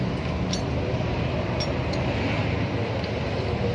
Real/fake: real